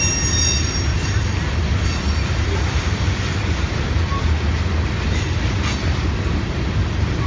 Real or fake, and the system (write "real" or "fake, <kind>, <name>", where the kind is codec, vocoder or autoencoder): real